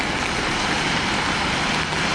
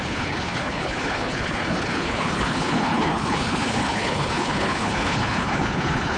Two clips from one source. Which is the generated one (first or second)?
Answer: second